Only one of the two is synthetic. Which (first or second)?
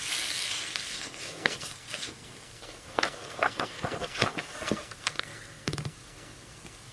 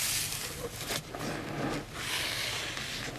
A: first